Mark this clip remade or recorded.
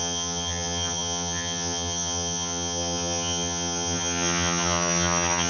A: remade